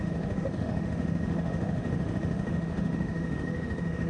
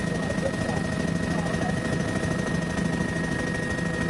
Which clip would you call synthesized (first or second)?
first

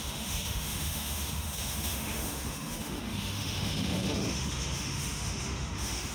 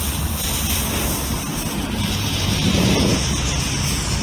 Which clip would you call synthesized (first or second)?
first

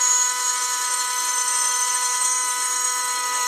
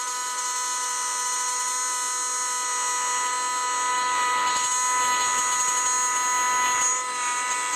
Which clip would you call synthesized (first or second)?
first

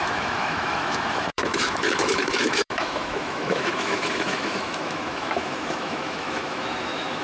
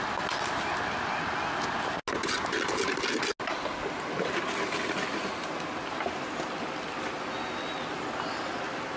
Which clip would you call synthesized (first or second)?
first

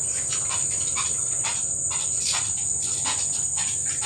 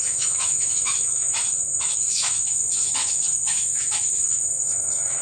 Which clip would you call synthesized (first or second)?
second